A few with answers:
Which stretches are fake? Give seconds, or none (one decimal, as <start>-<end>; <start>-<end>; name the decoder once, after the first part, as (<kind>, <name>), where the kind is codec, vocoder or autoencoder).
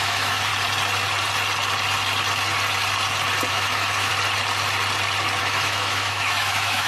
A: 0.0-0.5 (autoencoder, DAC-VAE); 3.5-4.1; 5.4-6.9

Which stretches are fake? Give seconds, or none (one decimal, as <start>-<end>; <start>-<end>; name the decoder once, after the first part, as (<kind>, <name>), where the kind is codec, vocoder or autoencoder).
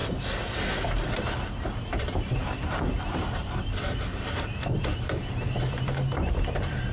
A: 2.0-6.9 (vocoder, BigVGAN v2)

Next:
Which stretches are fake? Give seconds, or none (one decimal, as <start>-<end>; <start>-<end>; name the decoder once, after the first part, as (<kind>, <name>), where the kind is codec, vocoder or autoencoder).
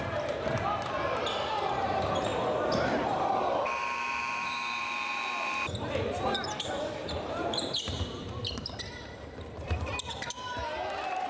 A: 0.0-8.4 (vocoder, BigVGAN v2); 8.9-11.3